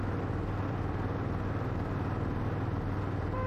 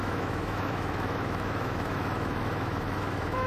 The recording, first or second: first